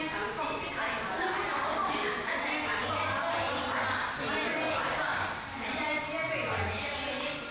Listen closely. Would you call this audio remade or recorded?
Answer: recorded